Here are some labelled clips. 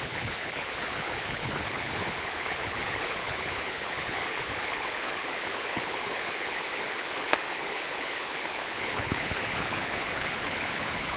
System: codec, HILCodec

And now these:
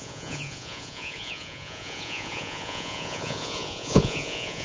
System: vocoder, Vocos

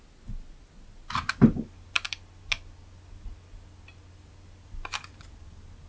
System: none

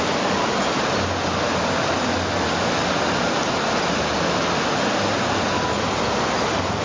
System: none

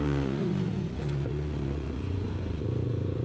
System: vocoder, Vocos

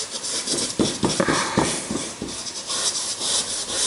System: vocoder, BigVGAN v2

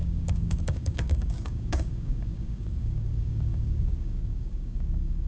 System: codec, DAC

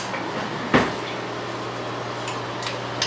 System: none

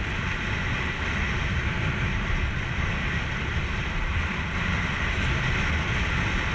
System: none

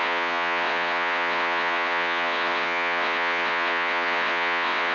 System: vocoder, WaveNeXt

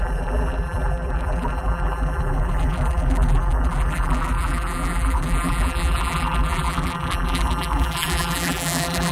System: vocoder, BigVGAN v2